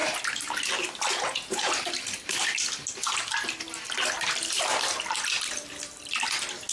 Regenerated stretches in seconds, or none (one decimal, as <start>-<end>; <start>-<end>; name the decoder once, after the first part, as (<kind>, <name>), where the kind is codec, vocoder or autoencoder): 1.1-1.7 (vocoder, Vocos)